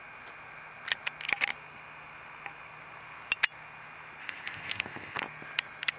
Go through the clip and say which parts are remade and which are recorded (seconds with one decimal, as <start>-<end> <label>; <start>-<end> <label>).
0.0-4.2 recorded; 4.2-5.2 remade; 5.2-6.0 recorded